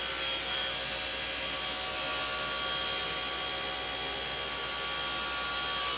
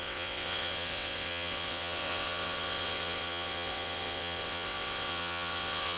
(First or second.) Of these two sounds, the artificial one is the second